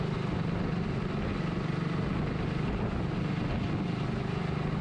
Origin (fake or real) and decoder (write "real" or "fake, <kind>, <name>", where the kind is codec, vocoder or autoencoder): real